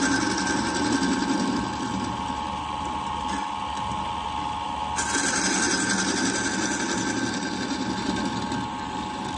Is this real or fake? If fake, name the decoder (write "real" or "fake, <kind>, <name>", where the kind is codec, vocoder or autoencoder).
real